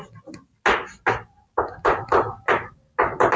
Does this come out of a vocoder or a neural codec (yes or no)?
no